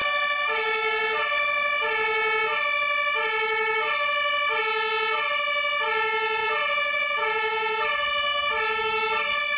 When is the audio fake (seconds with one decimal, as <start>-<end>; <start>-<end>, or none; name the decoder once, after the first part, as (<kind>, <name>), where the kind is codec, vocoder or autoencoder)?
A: 6.4-7.8 (vocoder, Vocos)